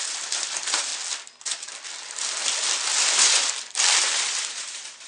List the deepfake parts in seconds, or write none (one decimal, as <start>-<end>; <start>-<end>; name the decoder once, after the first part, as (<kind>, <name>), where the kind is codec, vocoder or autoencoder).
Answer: 0.0-0.9 (vocoder, BigVGAN v2); 4.0-5.1